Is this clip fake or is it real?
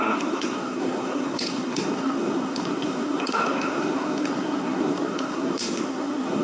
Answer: fake